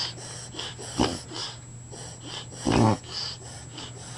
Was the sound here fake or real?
real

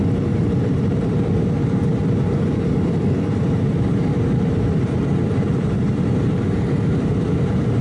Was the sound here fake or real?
fake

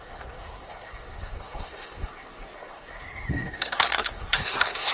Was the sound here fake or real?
fake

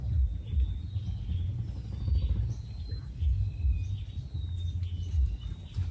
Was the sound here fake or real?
real